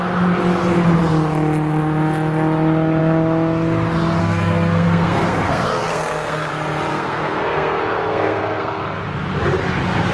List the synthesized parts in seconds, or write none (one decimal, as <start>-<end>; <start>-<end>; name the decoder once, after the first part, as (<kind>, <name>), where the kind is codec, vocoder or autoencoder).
4.2-6.5 (codec, SNAC); 6.9-8.8